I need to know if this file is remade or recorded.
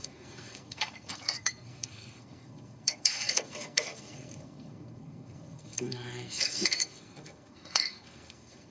remade